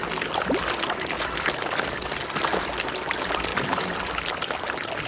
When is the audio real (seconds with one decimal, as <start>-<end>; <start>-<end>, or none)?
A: 0.0-5.1